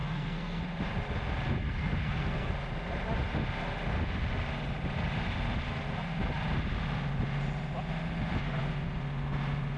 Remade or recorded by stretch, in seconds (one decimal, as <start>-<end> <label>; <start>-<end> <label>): 0.0-0.6 remade; 0.6-1.6 recorded; 1.6-2.5 remade; 2.5-9.8 recorded